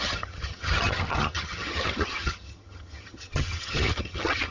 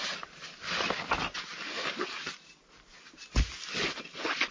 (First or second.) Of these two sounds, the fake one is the first